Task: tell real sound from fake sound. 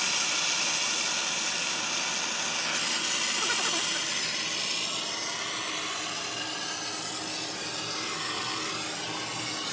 real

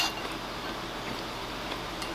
real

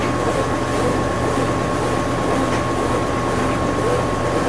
real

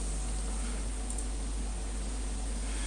real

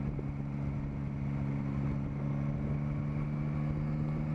real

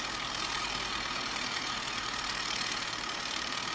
fake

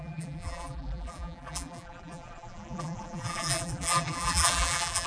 fake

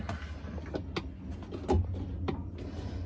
real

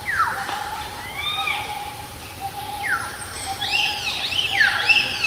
fake